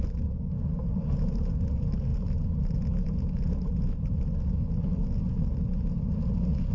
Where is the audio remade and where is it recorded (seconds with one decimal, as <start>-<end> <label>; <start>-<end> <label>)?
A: 0.0-6.7 recorded

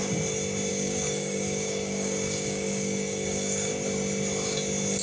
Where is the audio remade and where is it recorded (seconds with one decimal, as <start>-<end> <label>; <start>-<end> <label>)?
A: 0.0-0.7 recorded; 0.7-3.7 remade; 3.7-5.0 recorded

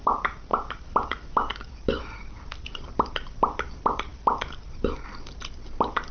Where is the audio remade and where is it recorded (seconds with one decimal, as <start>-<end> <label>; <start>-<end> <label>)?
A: 0.0-6.1 recorded